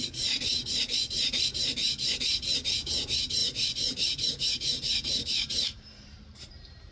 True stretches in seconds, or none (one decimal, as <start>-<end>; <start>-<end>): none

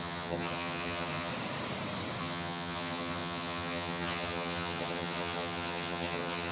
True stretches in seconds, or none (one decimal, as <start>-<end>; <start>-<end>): 1.3-2.2

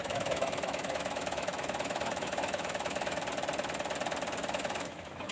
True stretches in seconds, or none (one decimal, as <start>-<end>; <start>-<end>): 3.2-4.4

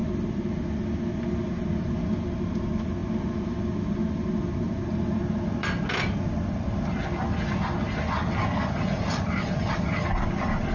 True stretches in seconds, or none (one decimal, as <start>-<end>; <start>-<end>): 0.0-10.7

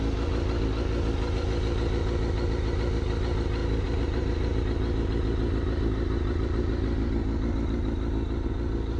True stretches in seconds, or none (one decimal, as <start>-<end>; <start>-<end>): 0.0-3.6; 4.6-9.0

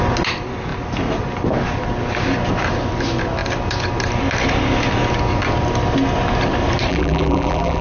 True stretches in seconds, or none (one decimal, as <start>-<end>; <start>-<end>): 0.0-6.9

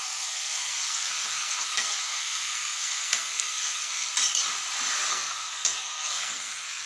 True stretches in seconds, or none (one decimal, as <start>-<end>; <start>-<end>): 4.1-5.1

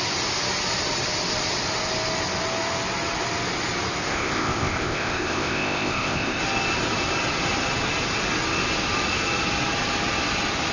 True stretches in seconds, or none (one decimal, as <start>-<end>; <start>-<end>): 0.0-4.1; 6.4-10.7